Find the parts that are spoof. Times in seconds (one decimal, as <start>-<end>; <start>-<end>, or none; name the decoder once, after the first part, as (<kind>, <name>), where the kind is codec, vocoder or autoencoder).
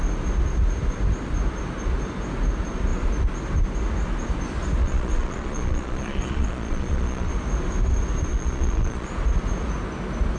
4.8-7.3 (vocoder, Vocos); 8.3-9.1